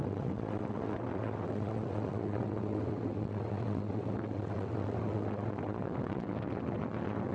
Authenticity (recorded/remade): remade